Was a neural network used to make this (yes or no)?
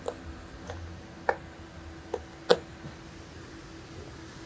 no